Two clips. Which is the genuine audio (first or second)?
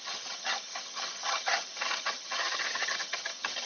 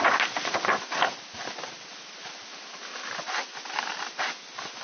second